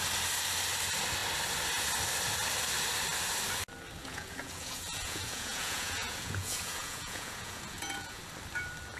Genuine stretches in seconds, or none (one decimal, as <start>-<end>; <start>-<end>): 0.0-4.0; 8.2-9.0